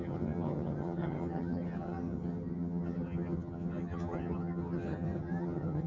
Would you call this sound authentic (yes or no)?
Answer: no